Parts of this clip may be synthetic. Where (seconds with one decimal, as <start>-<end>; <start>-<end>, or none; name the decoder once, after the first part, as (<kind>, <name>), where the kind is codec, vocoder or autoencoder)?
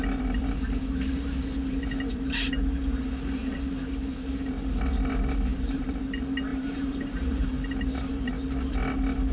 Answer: 5.5-6.0 (vocoder, BigVGAN v2); 6.5-7.7